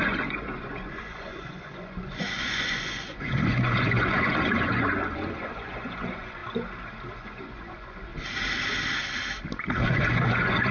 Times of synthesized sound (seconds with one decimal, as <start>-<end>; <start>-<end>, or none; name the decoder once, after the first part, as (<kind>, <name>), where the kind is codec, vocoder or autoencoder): 0.0-6.4 (vocoder, Vocos); 7.1-8.1; 9.8-10.7